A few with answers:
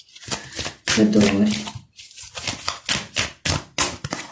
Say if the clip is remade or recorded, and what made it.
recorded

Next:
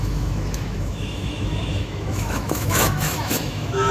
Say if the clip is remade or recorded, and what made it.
remade, autoencoder, DAC-VAE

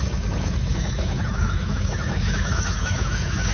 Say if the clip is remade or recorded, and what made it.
remade, autoencoder, DAC-VAE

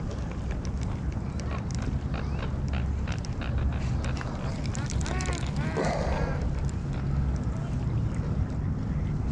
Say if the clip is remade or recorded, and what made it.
recorded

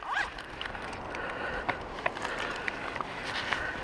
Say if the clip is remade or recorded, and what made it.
recorded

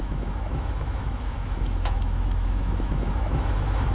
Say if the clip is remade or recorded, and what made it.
remade, autoencoder, DAC-VAE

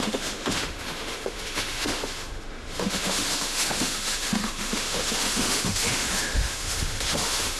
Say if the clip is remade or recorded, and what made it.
remade, autoencoder, DAC-VAE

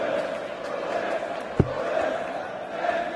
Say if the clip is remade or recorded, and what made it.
recorded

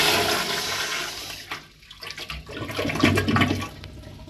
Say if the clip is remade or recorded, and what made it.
recorded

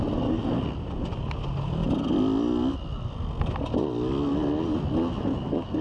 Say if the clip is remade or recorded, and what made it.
recorded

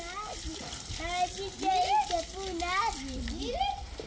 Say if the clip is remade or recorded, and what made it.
recorded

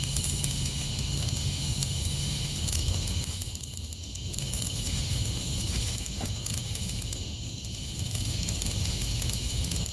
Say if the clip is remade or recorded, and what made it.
remade, autoencoder, DAC-VAE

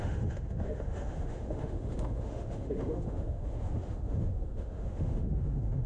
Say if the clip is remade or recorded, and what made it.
remade, autoencoder, DAC-VAE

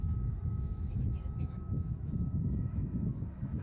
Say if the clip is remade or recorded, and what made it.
remade, autoencoder, DAC-VAE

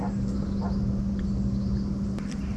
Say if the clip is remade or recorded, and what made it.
recorded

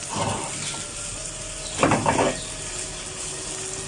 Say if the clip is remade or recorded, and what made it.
recorded